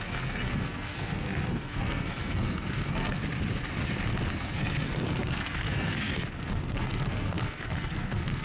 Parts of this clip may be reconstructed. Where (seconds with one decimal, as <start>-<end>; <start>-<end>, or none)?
0.0-3.2; 4.3-8.4